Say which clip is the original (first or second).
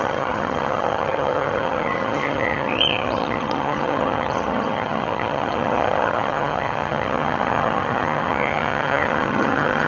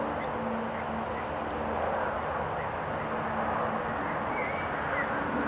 second